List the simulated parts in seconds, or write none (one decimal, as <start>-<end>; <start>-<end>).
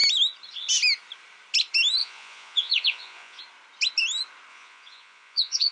2.0-3.4; 4.5-5.7